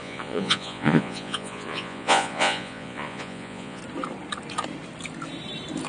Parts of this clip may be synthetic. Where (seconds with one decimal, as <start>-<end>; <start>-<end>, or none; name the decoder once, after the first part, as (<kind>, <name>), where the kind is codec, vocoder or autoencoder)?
0.0-3.8 (vocoder, Vocos)